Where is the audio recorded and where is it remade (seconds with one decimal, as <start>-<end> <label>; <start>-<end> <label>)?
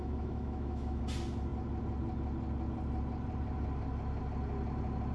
0.0-1.0 remade; 1.0-5.1 recorded